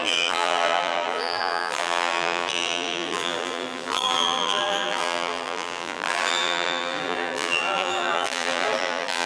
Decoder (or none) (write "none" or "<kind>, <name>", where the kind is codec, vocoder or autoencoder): vocoder, BigVGAN v2